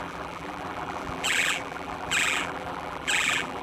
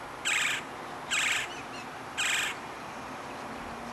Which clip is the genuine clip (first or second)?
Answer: second